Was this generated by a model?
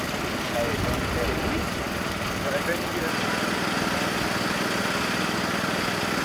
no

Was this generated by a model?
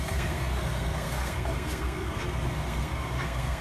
yes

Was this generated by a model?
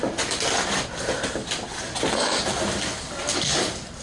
no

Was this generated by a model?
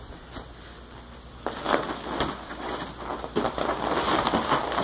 no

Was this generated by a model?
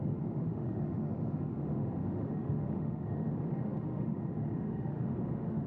yes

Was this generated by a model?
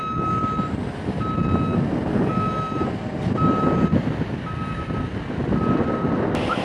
no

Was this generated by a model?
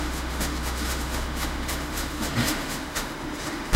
yes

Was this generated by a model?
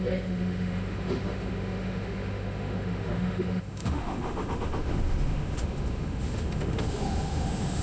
yes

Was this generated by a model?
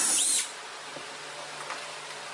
no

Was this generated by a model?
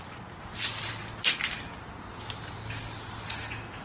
no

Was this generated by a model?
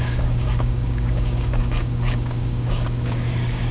yes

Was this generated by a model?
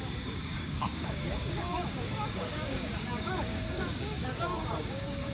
yes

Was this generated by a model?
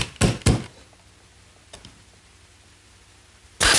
no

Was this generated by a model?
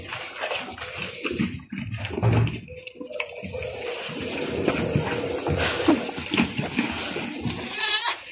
no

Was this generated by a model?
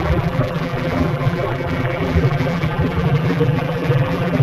yes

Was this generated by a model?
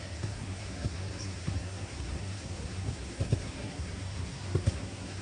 yes